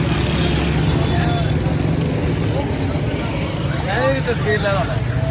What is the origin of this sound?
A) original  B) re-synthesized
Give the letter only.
A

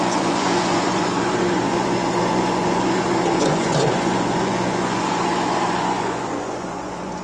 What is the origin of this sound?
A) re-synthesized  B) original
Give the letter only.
A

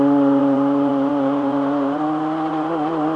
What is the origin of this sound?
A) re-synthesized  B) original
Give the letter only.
A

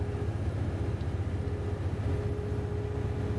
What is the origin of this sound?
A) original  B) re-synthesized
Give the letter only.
A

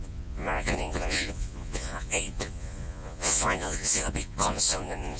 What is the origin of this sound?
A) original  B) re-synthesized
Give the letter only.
B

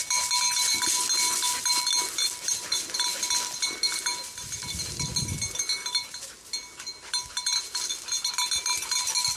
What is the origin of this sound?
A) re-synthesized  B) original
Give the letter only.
B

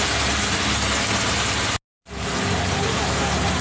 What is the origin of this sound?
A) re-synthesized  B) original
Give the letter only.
B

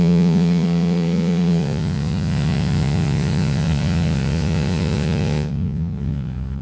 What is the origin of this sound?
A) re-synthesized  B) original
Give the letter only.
A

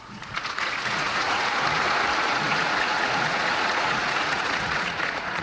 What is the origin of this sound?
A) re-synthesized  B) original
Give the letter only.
A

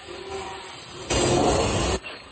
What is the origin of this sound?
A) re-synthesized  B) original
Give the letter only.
B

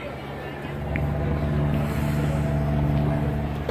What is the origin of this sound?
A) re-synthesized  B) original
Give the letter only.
B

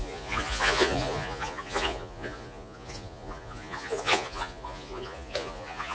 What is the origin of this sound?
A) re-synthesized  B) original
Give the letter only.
A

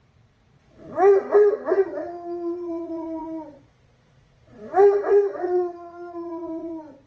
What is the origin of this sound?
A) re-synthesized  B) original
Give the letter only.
A